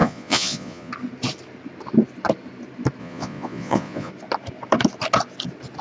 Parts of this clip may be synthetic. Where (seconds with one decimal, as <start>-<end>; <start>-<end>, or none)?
0.0-0.9; 3.0-4.1